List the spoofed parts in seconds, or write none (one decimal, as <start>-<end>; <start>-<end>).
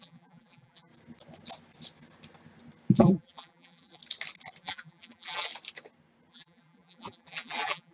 0.0-0.9; 3.0-4.0; 4.6-5.5; 6.3-7.9